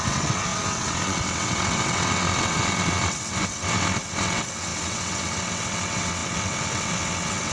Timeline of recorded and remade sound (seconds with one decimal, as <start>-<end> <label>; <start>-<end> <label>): 0.0-7.5 remade